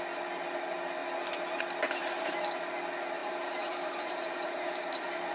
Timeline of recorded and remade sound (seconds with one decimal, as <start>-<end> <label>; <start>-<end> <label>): 0.0-3.2 recorded; 3.2-5.3 remade